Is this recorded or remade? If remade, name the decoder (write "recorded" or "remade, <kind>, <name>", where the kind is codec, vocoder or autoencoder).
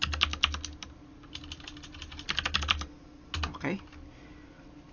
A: recorded